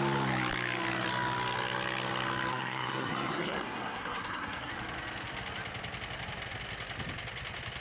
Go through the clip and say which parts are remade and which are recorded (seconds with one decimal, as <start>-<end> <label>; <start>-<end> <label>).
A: 0.0-2.5 recorded; 2.5-4.7 remade; 4.7-7.8 recorded